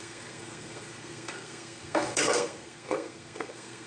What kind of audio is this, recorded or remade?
remade